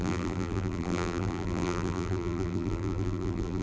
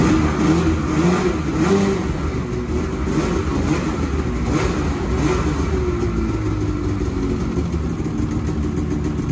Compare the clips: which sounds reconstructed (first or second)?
first